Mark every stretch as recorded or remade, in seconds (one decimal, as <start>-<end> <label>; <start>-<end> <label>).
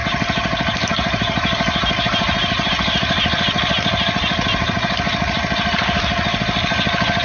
0.0-7.2 recorded